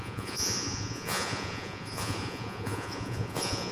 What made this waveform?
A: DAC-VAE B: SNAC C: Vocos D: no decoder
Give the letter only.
C